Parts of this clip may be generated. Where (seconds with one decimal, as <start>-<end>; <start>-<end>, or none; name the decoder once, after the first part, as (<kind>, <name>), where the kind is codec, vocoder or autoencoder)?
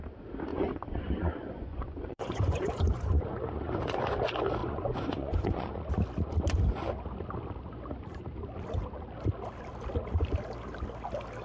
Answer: 0.5-3.7 (vocoder, Vocos); 4.6-5.7